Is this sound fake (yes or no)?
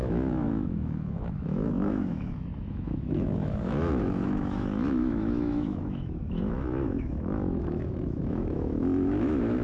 yes